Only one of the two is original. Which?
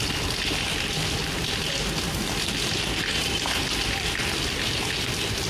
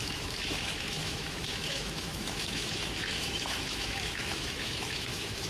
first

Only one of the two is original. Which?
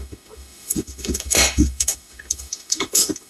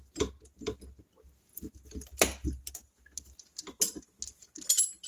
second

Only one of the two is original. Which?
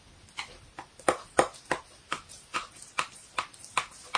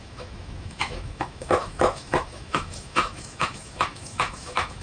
first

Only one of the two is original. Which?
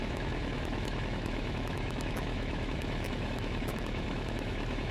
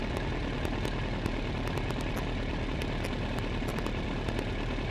second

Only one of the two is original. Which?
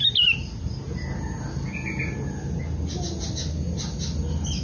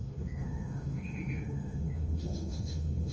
first